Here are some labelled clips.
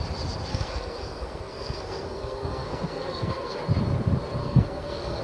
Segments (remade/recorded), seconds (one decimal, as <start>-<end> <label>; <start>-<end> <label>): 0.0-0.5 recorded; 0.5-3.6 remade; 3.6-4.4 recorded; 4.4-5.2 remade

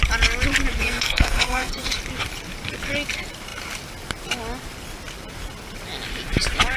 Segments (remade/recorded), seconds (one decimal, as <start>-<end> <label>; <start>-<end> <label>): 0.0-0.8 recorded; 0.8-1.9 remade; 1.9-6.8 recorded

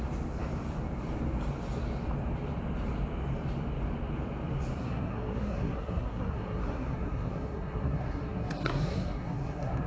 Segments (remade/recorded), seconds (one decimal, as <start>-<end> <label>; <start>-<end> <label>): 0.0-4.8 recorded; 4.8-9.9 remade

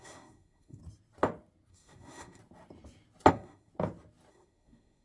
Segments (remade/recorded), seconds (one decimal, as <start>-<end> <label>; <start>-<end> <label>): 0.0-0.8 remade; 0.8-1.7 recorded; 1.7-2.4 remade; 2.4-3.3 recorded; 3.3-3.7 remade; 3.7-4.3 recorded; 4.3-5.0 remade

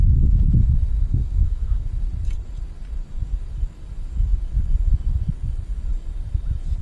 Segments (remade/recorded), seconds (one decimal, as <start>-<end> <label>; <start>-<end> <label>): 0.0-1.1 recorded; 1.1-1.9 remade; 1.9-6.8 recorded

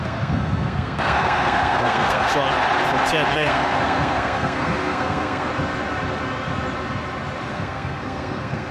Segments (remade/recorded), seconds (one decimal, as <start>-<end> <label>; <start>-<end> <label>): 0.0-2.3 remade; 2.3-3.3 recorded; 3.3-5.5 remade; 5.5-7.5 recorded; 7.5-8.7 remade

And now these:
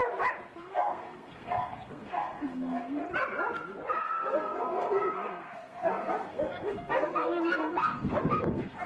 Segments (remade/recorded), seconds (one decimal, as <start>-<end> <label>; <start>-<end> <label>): 0.0-0.6 recorded; 0.6-3.0 remade; 3.0-4.0 recorded; 4.0-8.9 remade